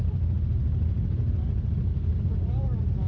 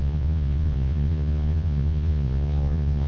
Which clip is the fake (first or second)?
second